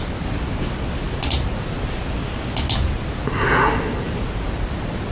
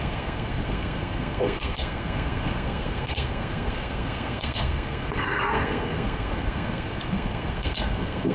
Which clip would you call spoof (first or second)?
second